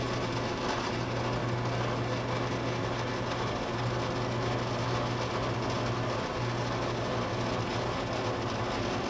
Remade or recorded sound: recorded